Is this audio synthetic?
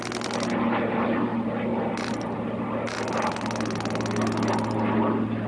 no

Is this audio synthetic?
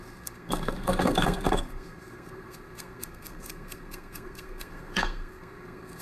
yes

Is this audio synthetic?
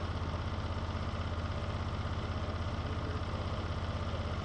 no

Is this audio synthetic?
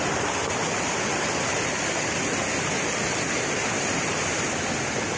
no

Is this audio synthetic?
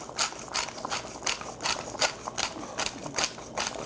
no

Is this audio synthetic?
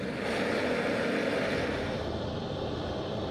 no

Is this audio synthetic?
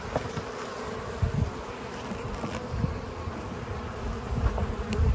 no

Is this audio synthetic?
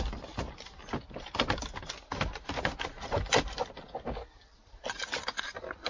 no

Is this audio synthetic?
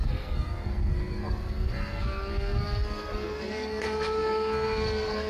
yes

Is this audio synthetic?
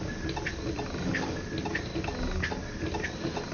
no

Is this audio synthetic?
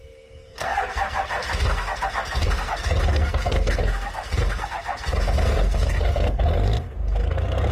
yes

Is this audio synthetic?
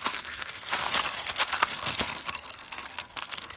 yes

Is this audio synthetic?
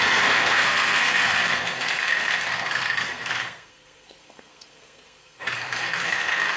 yes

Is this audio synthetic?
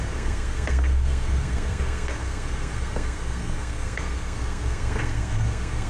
yes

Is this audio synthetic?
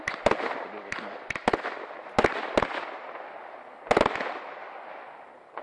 no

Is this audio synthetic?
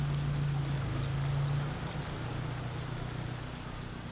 no